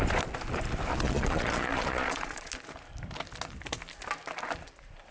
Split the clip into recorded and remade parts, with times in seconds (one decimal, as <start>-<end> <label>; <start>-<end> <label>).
0.0-0.9 recorded; 0.9-2.5 remade; 2.5-5.1 recorded